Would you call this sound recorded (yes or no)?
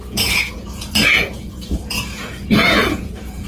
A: no